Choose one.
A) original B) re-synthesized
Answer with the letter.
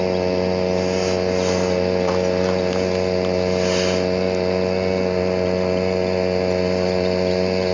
A